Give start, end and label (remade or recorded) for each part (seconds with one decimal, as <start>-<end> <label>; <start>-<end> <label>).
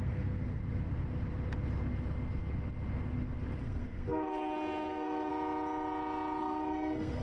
0.0-0.6 remade; 0.6-3.6 recorded; 3.6-5.3 remade; 5.3-6.4 recorded; 6.4-7.2 remade